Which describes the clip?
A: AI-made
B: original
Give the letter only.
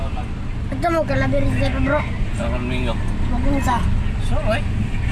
B